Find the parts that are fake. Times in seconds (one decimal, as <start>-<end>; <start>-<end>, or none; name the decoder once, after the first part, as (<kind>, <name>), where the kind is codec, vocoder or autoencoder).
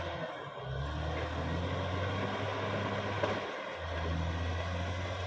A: none